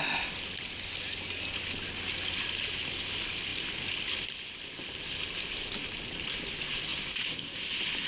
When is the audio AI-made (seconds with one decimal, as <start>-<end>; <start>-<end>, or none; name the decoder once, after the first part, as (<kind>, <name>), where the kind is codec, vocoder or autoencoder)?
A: none